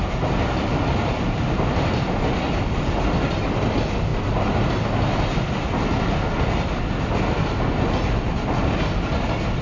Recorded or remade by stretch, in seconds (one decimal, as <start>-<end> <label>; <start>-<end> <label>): 0.0-9.6 recorded

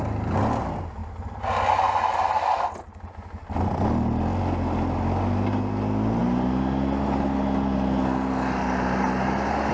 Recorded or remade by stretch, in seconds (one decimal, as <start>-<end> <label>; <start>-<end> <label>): 0.0-9.7 recorded

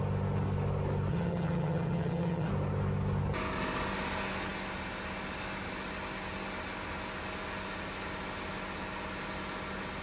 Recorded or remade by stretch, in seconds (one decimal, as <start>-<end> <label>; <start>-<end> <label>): 0.0-1.1 recorded; 1.1-2.5 remade; 2.5-10.0 recorded

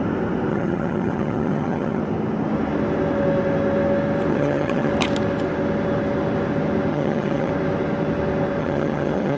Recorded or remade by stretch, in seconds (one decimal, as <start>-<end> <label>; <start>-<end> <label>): 0.0-0.5 recorded; 0.5-2.0 remade; 2.0-4.3 recorded; 4.3-4.9 remade; 4.9-6.9 recorded; 6.9-7.5 remade; 7.5-8.6 recorded; 8.6-9.4 remade

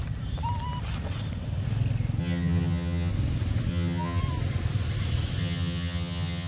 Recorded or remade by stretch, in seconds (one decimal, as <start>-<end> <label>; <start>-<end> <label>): 0.0-2.2 recorded; 2.2-3.1 remade; 3.1-3.7 recorded; 3.7-4.2 remade; 4.2-5.4 recorded; 5.4-6.5 remade

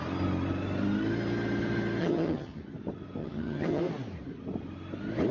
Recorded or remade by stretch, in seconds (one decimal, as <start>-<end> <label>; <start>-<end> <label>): 0.0-2.0 recorded; 2.0-2.6 remade; 2.6-3.2 recorded; 3.2-3.8 remade; 3.8-5.3 recorded

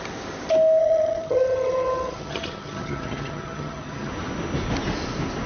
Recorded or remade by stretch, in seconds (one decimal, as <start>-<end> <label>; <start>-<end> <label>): 0.0-0.8 recorded; 0.8-4.1 remade; 4.1-5.5 recorded